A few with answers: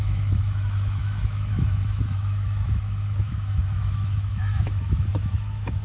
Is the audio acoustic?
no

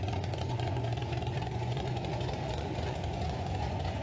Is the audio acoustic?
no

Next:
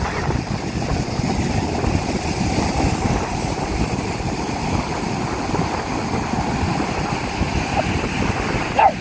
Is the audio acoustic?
yes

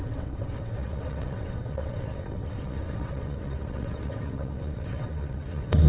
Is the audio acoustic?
no